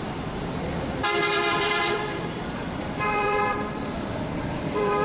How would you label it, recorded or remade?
remade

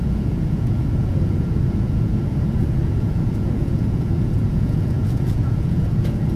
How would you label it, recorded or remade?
remade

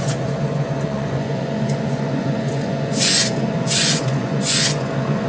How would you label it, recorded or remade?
remade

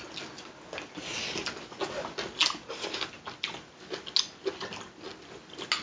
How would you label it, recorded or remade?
recorded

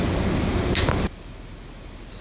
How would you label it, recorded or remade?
recorded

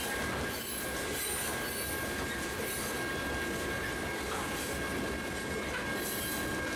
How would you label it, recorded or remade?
recorded